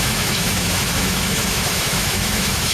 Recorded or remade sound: remade